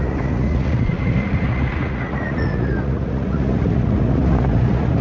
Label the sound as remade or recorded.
remade